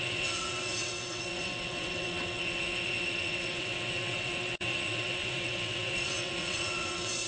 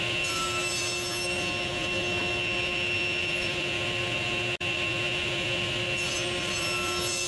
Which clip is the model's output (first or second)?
first